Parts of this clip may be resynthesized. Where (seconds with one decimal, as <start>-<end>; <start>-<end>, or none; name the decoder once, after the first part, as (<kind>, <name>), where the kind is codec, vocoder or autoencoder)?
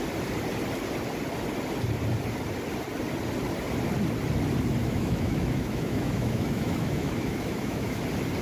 4.8-8.0 (autoencoder, DAC-VAE)